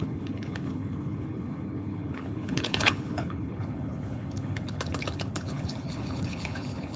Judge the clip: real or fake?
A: fake